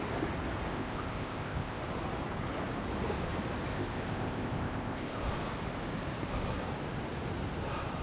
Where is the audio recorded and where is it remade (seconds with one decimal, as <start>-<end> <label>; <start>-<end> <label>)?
0.0-0.7 recorded; 0.7-1.8 remade; 1.8-3.7 recorded; 3.7-5.2 remade; 5.2-8.0 recorded